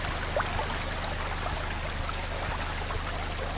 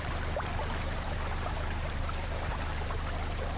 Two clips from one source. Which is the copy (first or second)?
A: second